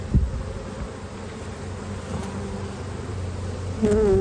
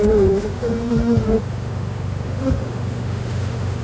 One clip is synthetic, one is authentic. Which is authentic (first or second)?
first